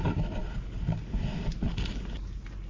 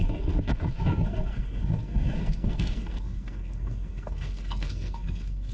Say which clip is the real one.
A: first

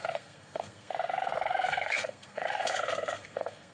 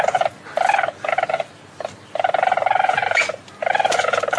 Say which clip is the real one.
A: second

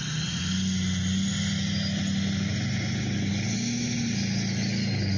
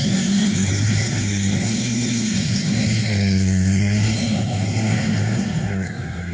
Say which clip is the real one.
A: first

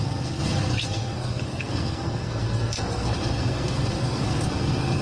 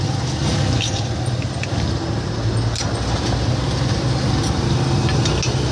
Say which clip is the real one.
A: second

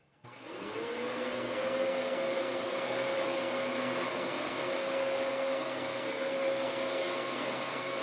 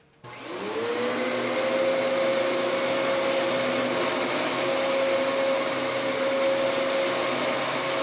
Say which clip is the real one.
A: second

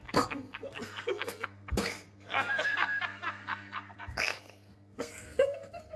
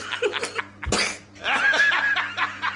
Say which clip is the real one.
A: second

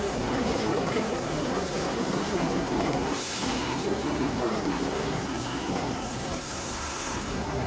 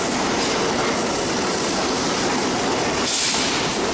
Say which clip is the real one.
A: second